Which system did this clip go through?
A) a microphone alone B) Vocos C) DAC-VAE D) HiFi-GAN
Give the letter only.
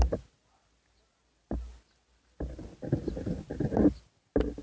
A